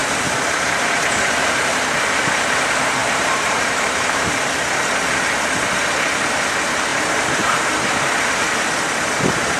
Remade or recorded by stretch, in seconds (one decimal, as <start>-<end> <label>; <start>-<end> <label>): 0.0-1.7 remade; 1.7-3.0 recorded; 3.0-4.2 remade; 4.2-6.9 recorded; 6.9-7.6 remade; 7.6-9.6 recorded